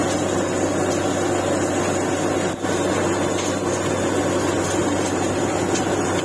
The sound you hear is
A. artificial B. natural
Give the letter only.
B